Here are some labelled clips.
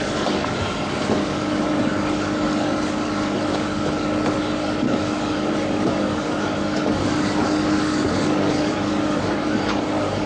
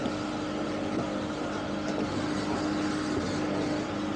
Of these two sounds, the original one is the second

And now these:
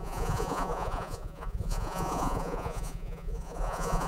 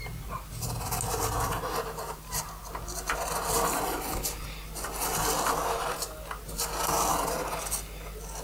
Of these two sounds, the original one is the second